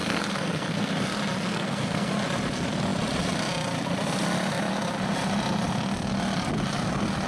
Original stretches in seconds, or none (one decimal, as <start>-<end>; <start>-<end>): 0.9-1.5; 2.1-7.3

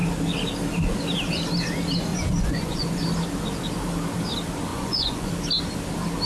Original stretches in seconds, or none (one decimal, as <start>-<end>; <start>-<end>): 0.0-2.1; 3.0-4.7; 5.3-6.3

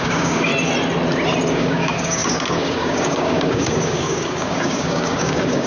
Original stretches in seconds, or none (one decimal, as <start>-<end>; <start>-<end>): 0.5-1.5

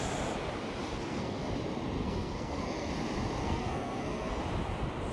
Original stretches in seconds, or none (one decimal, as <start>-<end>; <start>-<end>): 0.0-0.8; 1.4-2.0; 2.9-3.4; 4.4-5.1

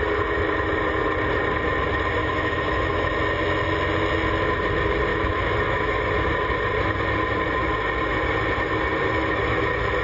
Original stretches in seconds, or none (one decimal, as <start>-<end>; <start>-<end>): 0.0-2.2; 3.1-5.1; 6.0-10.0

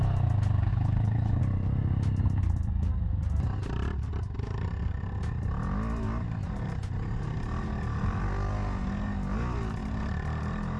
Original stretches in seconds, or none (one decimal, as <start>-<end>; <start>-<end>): 0.0-0.7; 1.4-10.8